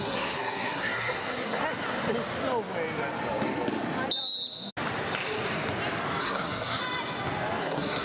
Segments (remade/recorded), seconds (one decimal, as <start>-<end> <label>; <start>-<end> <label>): 0.0-1.6 remade; 1.6-6.2 recorded; 6.2-6.8 remade; 6.8-7.6 recorded; 7.6-8.0 remade